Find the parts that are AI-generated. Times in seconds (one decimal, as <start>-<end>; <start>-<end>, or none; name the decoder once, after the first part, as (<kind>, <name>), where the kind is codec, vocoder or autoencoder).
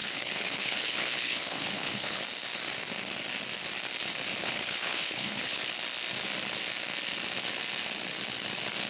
0.0-2.2 (codec, HILCodec); 4.4-5.6